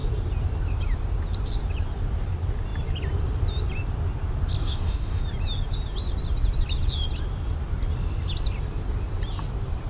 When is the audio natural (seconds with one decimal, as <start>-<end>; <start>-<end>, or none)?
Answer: 0.0-4.6; 5.2-9.9